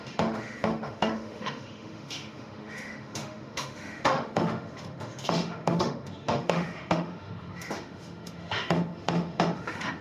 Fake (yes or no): yes